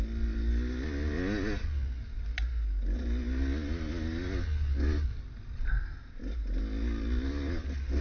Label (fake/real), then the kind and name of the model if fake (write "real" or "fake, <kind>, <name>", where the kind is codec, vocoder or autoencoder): real